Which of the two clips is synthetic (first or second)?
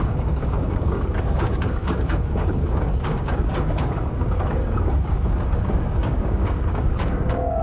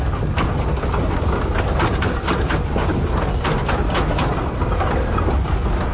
first